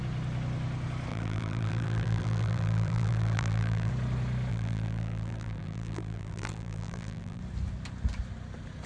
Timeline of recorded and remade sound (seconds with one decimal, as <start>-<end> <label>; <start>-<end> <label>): 0.0-1.1 recorded; 1.1-3.9 remade; 3.9-4.5 recorded; 4.5-7.4 remade; 7.4-8.9 recorded